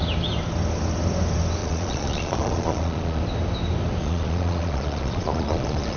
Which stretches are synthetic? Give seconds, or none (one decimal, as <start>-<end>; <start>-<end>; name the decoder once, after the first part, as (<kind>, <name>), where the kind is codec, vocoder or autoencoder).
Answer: 1.6-3.2 (vocoder, Vocos); 4.0-6.0